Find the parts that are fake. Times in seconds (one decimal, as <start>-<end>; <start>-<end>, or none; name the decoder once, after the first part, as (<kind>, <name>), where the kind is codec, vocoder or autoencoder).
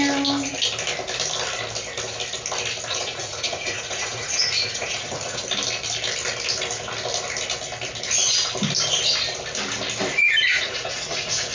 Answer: 2.9-5.4 (vocoder, Vocos); 10.5-11.5